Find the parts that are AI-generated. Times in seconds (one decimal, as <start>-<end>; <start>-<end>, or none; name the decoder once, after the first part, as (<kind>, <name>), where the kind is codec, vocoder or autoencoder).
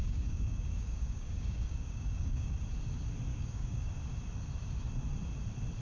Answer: 0.0-2.5 (codec, DAC); 3.3-3.9